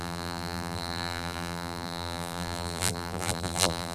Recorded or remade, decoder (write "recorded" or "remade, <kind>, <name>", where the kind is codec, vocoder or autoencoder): remade, vocoder, BigVGAN v2